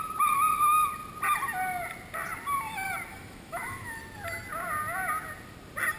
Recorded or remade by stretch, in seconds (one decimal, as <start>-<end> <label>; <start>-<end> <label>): 0.0-3.1 recorded; 3.1-4.0 remade; 4.0-6.0 recorded

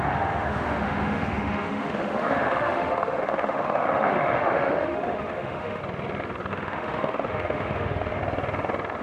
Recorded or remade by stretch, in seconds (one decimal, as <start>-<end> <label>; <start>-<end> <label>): 0.0-5.8 remade; 5.8-6.5 recorded; 6.5-8.2 remade; 8.2-9.0 recorded

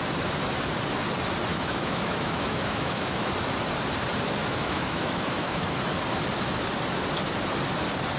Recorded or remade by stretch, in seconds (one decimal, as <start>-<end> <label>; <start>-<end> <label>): 0.0-1.5 recorded; 1.5-3.3 remade; 3.3-4.4 recorded; 4.4-5.6 remade; 5.6-8.2 recorded

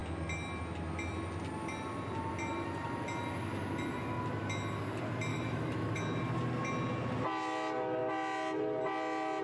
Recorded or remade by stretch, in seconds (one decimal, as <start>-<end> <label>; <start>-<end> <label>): 0.0-5.3 recorded; 5.3-6.0 remade; 6.0-9.4 recorded

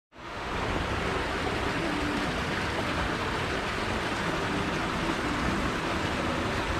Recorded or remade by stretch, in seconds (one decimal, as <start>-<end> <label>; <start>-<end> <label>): 0.0-0.5 remade; 0.5-6.8 recorded

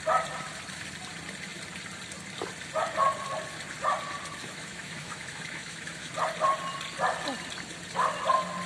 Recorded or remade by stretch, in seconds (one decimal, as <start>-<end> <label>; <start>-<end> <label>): 0.0-4.4 recorded; 4.4-6.1 remade; 6.1-8.7 recorded